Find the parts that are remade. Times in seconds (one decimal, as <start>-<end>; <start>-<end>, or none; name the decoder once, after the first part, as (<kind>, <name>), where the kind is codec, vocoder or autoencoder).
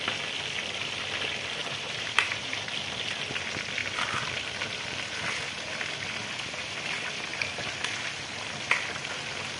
1.6-2.6 (vocoder, BigVGAN v2)